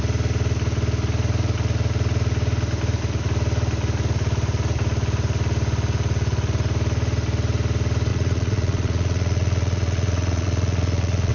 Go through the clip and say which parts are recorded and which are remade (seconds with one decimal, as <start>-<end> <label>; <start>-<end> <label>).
0.0-8.1 recorded; 8.1-11.3 remade